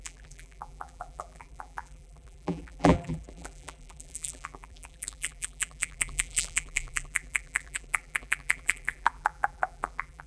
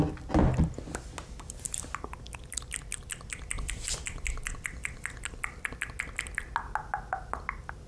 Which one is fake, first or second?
first